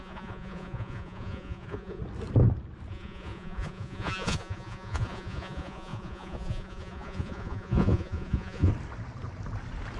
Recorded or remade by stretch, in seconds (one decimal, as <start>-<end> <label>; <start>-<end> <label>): 0.0-2.0 remade; 2.0-2.9 recorded; 2.9-8.7 remade; 8.7-10.0 recorded